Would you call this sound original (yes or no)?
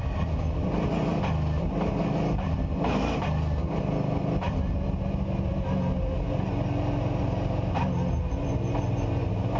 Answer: yes